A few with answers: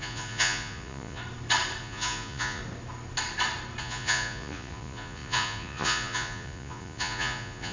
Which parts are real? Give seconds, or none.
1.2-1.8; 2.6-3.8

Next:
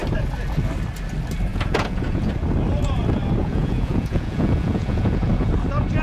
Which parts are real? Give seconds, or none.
0.0-1.5; 2.3-3.4; 5.5-6.0

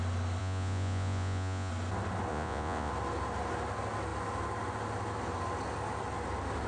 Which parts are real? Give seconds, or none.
0.0-0.4; 1.7-2.3; 2.9-6.7

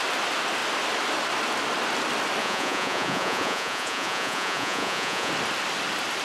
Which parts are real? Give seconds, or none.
0.0-2.4; 5.3-6.2

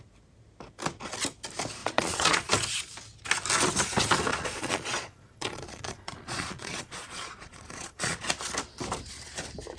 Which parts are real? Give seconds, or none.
0.0-1.8; 2.5-4.3; 8.3-9.8

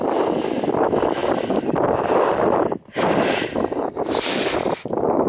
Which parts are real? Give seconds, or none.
0.0-5.3